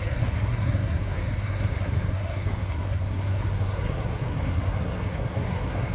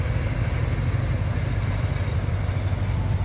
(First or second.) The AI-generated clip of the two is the first